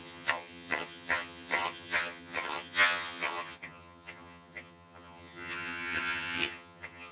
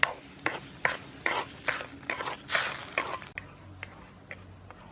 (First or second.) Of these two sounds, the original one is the second